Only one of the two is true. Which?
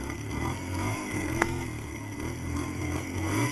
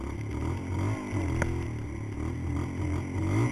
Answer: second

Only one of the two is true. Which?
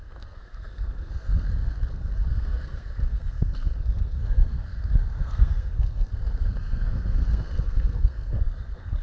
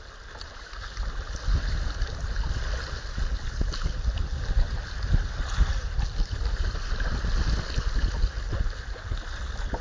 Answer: second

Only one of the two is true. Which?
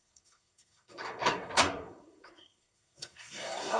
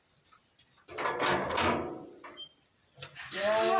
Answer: second